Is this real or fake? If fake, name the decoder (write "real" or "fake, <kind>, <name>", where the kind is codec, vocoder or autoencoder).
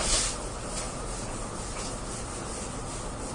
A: real